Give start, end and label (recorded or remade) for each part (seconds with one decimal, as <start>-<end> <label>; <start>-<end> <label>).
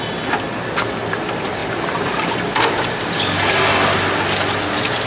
0.0-5.1 recorded